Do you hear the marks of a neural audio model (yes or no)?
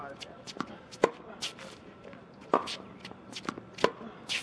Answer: no